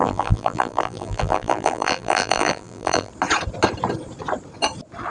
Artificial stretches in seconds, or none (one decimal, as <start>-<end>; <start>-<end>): 0.0-3.1